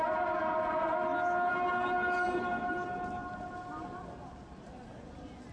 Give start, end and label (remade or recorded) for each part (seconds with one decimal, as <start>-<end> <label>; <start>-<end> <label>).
0.0-0.4 remade; 0.4-1.5 recorded; 1.5-5.5 remade